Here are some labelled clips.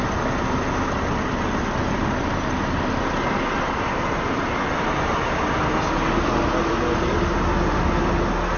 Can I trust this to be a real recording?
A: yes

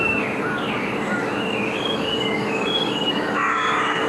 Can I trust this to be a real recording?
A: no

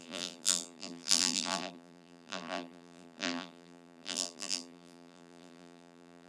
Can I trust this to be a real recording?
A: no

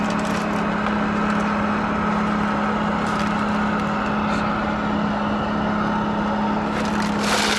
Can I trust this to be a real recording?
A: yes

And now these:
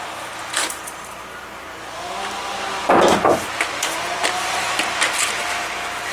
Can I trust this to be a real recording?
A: yes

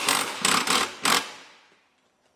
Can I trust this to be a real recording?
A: yes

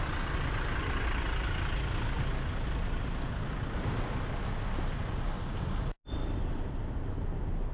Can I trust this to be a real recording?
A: yes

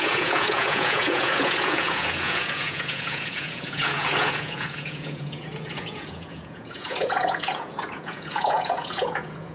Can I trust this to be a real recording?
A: no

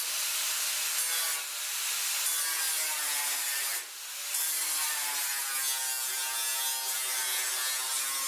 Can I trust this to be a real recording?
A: yes